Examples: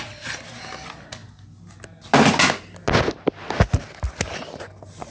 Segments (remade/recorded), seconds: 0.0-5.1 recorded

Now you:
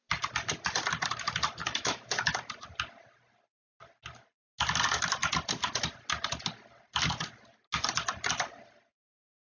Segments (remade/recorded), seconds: 0.0-1.6 recorded; 1.6-2.3 remade; 2.3-9.6 recorded

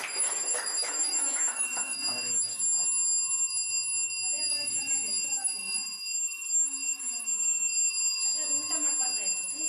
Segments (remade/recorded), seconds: 0.0-2.5 remade; 2.5-4.5 recorded; 4.5-8.2 remade; 8.2-9.7 recorded

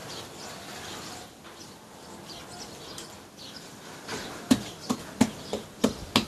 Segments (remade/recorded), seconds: 0.0-6.3 recorded

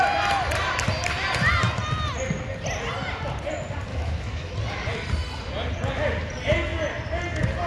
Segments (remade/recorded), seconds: 0.0-3.9 recorded; 3.9-4.5 remade; 4.5-7.7 recorded

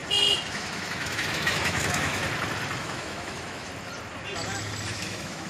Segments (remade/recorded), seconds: 0.0-0.5 recorded; 0.5-2.2 remade; 2.2-2.8 recorded; 2.8-3.7 remade; 3.7-4.9 recorded; 4.9-5.5 remade

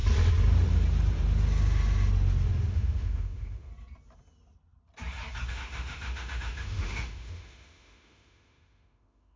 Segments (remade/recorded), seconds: 0.0-2.7 recorded; 2.7-3.7 remade; 3.7-5.5 recorded; 5.5-9.4 remade

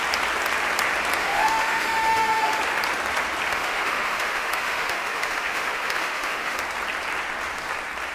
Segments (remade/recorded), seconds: 0.0-1.2 recorded; 1.2-2.6 remade; 2.6-3.5 recorded; 3.5-6.6 remade; 6.6-8.1 recorded